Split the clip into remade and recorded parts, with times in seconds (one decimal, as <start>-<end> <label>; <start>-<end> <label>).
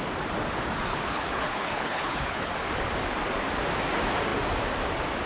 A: 0.0-0.9 recorded; 0.9-2.5 remade; 2.5-5.3 recorded